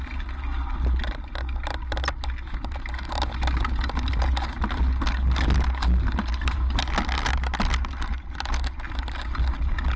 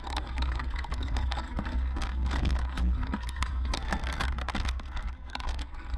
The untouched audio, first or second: first